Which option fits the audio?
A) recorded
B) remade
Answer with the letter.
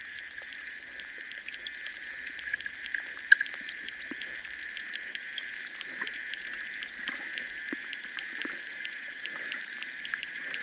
B